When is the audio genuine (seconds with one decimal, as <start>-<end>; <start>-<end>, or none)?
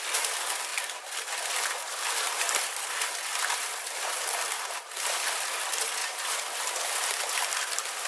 0.7-1.4